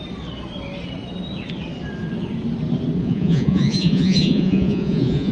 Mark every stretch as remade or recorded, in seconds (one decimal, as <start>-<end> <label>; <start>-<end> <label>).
0.0-3.0 recorded; 3.0-5.3 remade